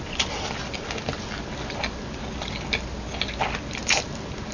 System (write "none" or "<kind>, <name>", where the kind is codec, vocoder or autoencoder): none